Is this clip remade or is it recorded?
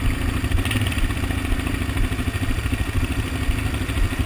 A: recorded